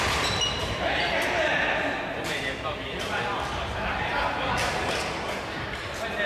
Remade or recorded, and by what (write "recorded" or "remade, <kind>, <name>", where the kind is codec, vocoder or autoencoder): recorded